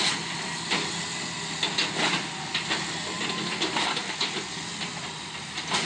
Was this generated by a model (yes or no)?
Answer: no